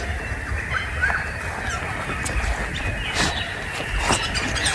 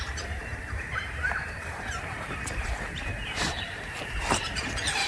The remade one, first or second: second